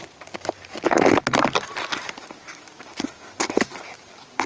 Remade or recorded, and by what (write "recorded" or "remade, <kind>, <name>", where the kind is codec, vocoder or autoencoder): remade, vocoder, BigVGAN v2